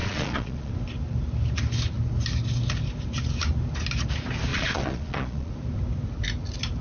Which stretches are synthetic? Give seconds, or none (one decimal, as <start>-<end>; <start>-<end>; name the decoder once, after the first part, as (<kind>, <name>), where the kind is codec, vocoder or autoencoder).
0.0-0.7 (vocoder, Vocos); 4.5-5.5